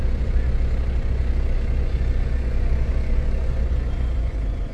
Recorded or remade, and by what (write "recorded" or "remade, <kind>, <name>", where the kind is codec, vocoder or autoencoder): remade, vocoder, Vocos